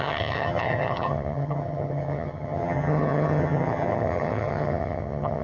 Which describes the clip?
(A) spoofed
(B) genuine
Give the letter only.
A